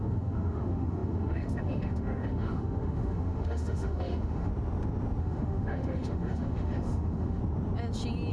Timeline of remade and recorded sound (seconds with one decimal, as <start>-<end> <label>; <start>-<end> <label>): 0.0-4.5 remade; 4.5-5.2 recorded; 5.2-7.4 remade; 7.4-8.3 recorded